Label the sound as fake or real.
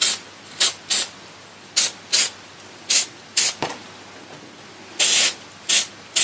real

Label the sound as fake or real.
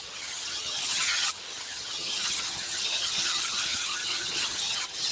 fake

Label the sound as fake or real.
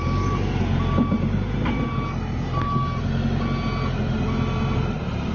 real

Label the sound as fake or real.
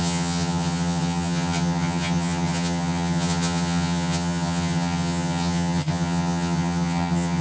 fake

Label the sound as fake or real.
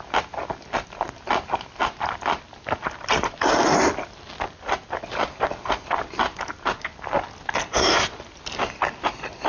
real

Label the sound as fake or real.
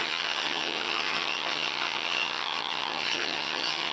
fake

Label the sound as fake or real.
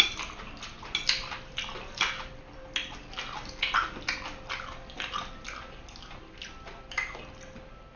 real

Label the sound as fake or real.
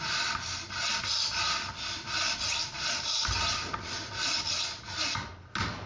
real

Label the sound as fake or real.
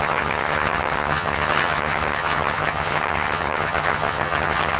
fake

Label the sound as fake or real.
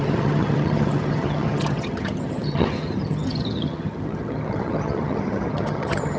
fake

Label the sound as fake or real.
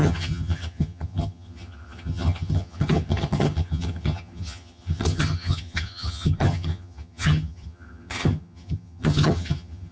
fake